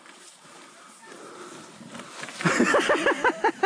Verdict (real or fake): real